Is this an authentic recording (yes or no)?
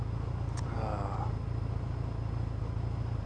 yes